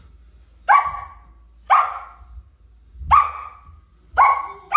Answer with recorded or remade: recorded